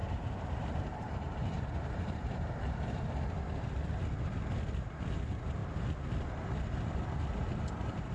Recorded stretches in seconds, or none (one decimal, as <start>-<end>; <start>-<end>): 3.1-8.1